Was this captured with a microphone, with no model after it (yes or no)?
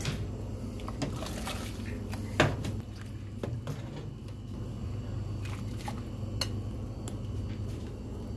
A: yes